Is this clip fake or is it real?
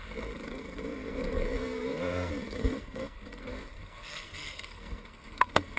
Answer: fake